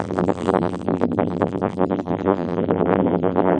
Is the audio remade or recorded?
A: remade